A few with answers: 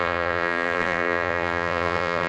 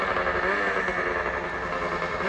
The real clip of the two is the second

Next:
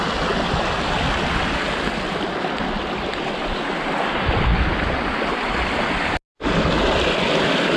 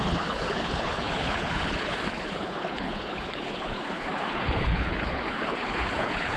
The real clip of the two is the first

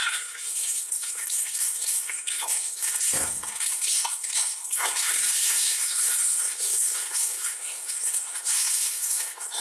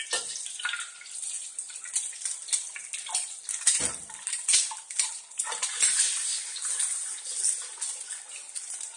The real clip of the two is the second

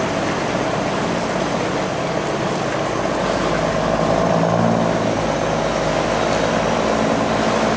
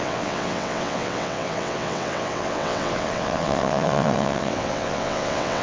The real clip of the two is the first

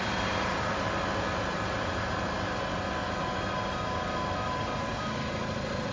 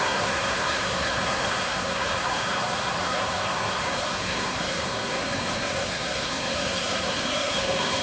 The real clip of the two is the first